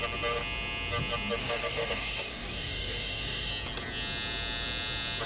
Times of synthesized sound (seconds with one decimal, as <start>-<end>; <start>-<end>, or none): 1.4-3.5